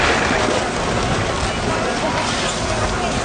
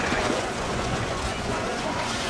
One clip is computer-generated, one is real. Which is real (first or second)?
first